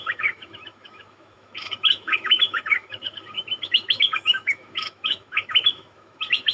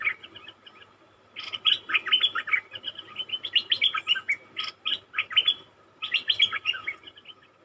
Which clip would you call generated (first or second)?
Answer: first